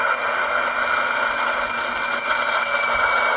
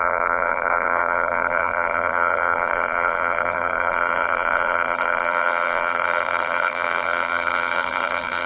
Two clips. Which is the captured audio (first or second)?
first